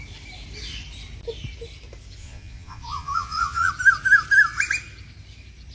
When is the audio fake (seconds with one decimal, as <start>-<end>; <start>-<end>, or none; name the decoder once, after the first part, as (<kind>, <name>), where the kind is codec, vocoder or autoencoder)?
2.2-3.7 (vocoder, Vocos)

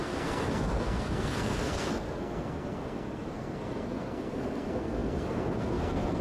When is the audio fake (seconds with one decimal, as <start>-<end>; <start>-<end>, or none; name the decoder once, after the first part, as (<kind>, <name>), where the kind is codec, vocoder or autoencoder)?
0.0-6.2 (codec, SNAC)

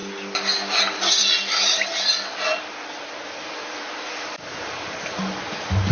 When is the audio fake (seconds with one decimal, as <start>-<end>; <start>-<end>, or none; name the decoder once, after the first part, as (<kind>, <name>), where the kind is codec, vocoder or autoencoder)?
none